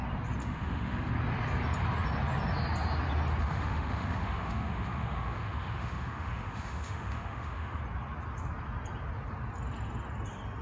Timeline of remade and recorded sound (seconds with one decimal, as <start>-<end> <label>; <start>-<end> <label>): 0.0-0.4 recorded; 0.4-1.1 remade; 1.1-3.4 recorded; 3.4-7.8 remade; 7.8-10.6 recorded